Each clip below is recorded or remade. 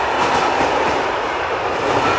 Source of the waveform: recorded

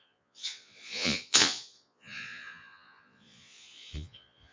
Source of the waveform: remade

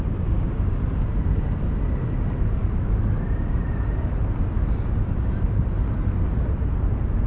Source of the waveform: recorded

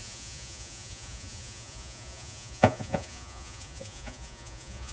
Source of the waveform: remade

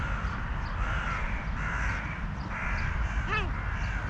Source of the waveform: recorded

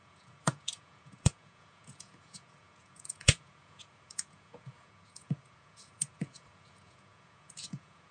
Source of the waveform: remade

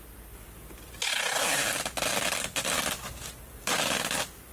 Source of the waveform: recorded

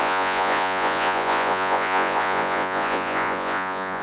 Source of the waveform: remade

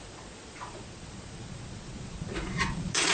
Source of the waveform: remade